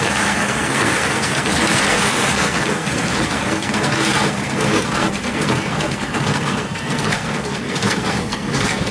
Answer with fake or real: fake